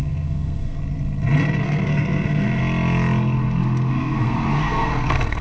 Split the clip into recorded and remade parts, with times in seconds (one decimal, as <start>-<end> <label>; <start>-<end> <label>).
0.0-0.8 remade; 0.8-1.6 recorded; 1.6-2.6 remade; 2.6-3.9 recorded; 3.9-5.4 remade

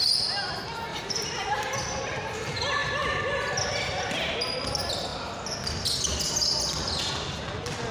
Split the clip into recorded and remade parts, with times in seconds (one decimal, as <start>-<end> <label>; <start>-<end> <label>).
0.0-7.9 recorded

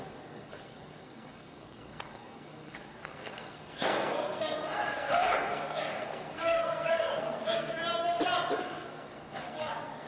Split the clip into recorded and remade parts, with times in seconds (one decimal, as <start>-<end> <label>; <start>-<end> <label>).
0.0-7.8 remade; 7.8-8.6 recorded; 8.6-10.1 remade

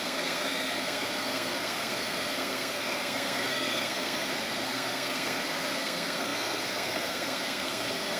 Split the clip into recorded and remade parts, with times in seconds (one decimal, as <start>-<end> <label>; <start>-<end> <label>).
0.0-8.2 remade

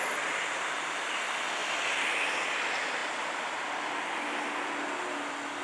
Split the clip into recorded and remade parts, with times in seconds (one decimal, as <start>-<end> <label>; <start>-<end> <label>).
0.0-5.6 recorded

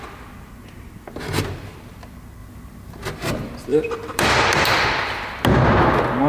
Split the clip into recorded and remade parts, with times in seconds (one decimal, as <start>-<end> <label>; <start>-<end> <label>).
0.0-6.3 recorded

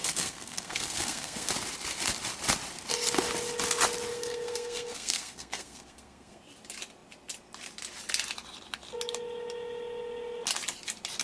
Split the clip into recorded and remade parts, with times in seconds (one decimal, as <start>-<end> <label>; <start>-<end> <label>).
0.0-1.5 remade; 1.5-4.1 recorded; 4.1-6.4 remade; 6.4-11.2 recorded